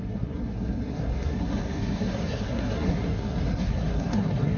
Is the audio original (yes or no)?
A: no